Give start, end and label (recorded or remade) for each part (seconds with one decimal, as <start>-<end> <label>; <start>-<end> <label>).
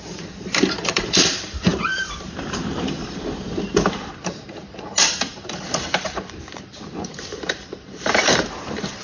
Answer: 0.0-9.0 remade